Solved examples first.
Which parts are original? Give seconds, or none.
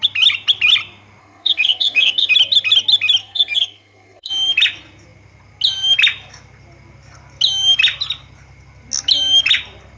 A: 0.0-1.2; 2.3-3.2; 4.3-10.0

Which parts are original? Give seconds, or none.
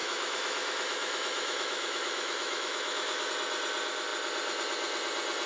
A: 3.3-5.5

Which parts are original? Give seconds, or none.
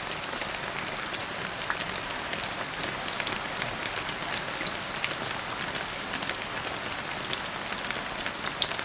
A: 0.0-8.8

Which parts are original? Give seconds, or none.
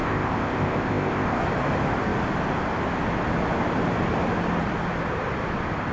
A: 1.4-5.9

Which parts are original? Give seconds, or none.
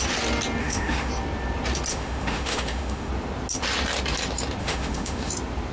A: 0.0-0.6; 1.1-1.9; 3.1-4.6; 5.3-5.7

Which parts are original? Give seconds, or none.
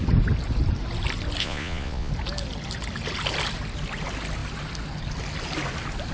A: 0.0-1.4; 2.1-6.1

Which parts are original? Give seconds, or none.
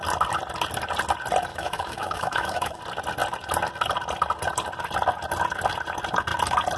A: 0.0-1.5; 2.8-6.8